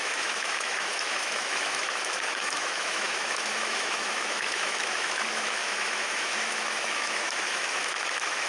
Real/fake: fake